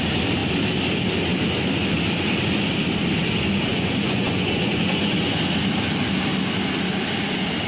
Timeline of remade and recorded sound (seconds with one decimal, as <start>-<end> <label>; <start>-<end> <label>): 0.0-3.7 recorded; 3.7-5.4 remade; 5.4-7.7 recorded